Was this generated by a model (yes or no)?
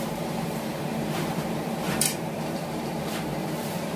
yes